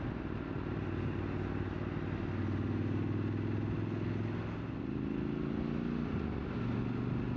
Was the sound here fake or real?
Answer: real